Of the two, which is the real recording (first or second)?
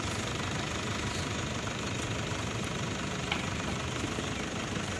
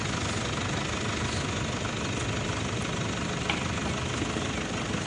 second